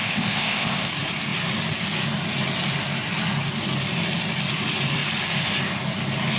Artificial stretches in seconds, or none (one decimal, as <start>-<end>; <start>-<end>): 0.0-0.9